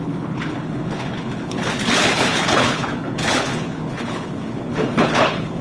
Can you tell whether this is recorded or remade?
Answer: remade